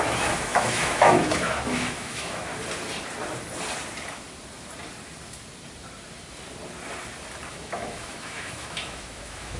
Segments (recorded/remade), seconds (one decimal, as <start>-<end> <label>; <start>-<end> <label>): 0.0-2.5 remade; 2.5-7.5 recorded; 7.5-9.6 remade